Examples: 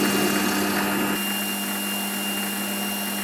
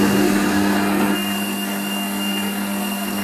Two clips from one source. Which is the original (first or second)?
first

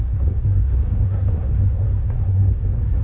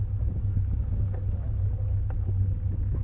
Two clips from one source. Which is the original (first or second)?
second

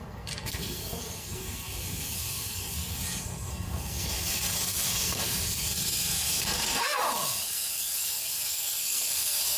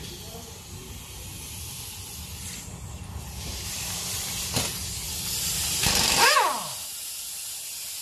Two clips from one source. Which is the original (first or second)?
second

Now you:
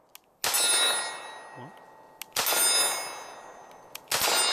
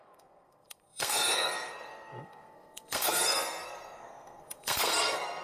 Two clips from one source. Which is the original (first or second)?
first